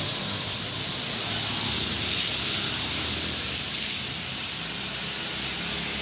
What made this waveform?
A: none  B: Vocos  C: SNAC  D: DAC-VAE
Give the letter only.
A